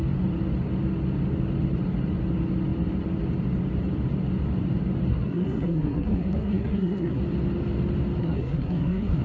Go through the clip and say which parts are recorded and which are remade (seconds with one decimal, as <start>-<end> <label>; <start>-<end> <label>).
0.0-5.1 recorded; 5.1-7.2 remade; 7.2-8.2 recorded; 8.2-9.2 remade